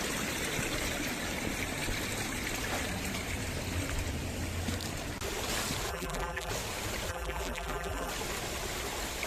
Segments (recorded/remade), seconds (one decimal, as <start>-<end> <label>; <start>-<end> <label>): 0.0-5.9 recorded; 5.9-6.5 remade; 6.5-7.1 recorded; 7.1-8.1 remade; 8.1-9.3 recorded